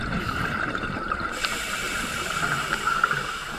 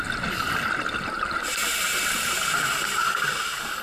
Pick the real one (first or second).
second